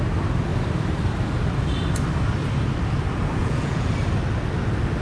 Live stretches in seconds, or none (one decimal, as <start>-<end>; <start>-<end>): 0.0-3.4; 3.9-5.0